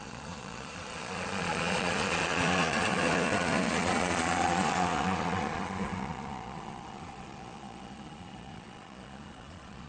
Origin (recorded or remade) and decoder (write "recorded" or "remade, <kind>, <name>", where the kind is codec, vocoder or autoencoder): remade, vocoder, Vocos